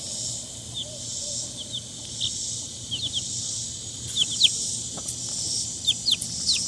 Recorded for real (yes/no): yes